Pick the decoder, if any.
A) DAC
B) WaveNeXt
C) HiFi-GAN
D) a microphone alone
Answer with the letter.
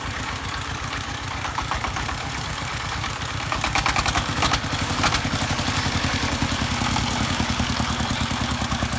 A